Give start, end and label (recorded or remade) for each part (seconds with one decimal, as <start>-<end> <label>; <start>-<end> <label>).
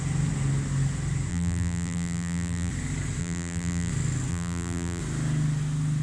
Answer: 0.0-1.3 recorded; 1.3-2.7 remade; 2.7-3.2 recorded; 3.2-3.9 remade; 3.9-4.3 recorded; 4.3-5.0 remade; 5.0-6.0 recorded